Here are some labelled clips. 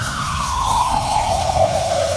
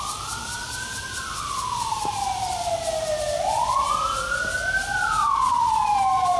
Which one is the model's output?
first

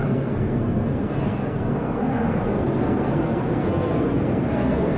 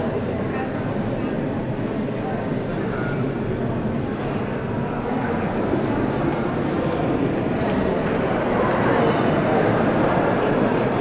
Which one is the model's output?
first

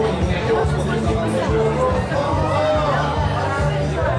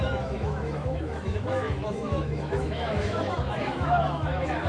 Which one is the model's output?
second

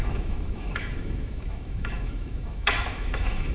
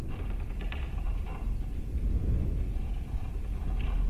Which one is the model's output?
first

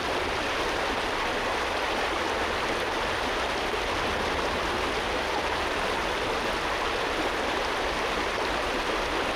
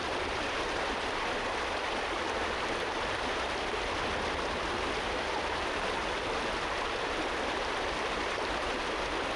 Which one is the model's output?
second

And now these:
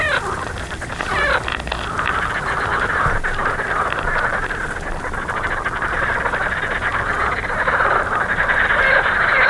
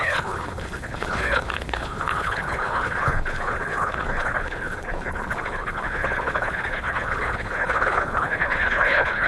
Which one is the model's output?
second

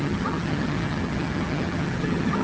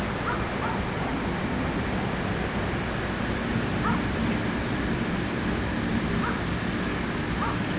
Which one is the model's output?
first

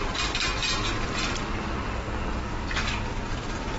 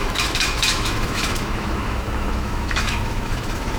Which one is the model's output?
second